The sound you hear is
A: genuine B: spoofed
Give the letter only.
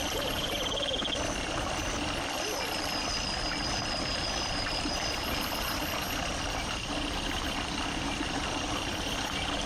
A